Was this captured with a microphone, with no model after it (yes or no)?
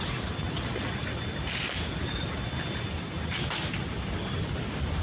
yes